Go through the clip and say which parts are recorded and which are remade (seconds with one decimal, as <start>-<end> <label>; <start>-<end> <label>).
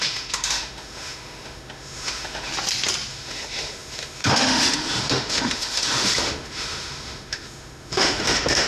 0.0-2.5 remade; 2.5-3.1 recorded; 3.1-8.7 remade